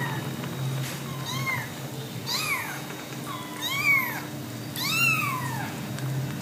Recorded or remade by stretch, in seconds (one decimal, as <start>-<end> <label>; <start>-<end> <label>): 0.0-2.2 recorded; 2.2-3.1 remade; 3.1-5.2 recorded; 5.2-5.9 remade; 5.9-6.4 recorded